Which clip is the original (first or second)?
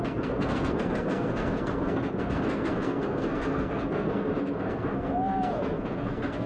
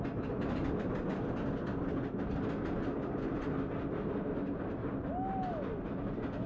second